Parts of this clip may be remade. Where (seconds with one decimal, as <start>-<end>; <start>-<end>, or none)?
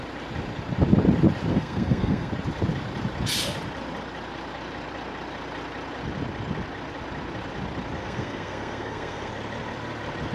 1.5-2.3; 8.0-9.3